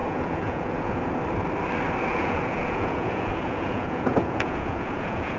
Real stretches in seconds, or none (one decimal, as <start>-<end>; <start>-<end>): 1.1-2.1